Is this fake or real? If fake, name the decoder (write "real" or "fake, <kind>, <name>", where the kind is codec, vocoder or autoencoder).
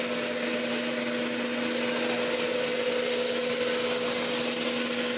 real